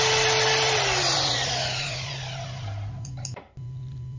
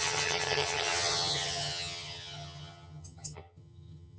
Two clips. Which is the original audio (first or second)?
first